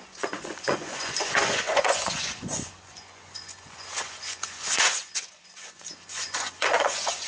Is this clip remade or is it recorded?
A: remade